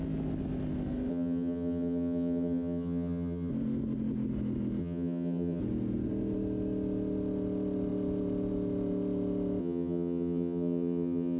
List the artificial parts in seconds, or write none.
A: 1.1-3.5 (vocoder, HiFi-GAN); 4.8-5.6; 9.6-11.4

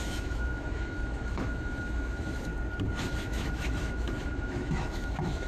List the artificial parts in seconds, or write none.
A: 0.0-2.5 (autoencoder, DAC-VAE); 3.1-5.5

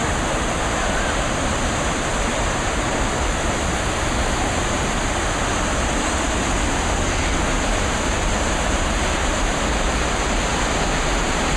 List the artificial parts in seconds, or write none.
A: 0.0-2.9 (vocoder, BigVGAN v2); 7.8-11.6

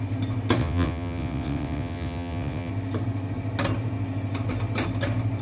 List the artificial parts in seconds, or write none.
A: 0.6-2.7 (vocoder, WaveNeXt)